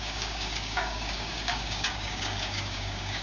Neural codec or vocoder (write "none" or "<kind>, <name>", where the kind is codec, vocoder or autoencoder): codec, DAC